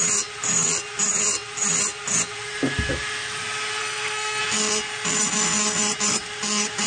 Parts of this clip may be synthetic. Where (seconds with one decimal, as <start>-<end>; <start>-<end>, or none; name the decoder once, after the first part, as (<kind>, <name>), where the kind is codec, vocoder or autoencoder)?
3.8-4.4 (codec, SNAC)

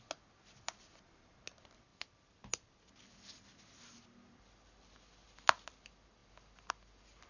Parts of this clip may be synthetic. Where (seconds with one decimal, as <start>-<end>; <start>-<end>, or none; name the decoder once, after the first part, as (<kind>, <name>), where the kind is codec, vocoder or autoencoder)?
none

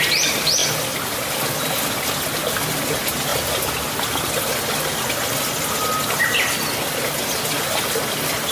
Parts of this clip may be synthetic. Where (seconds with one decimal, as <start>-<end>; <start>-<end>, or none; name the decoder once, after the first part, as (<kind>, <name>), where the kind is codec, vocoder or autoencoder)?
none

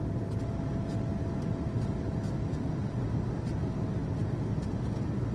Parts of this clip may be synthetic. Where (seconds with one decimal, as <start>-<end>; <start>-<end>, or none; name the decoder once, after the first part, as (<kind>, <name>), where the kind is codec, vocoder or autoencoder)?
none

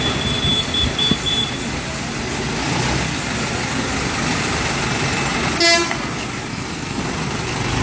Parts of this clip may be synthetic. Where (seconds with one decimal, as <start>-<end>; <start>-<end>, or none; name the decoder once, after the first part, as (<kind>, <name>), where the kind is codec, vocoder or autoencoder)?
6.5-7.0 (codec, SNAC)